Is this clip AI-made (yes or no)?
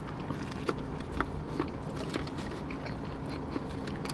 no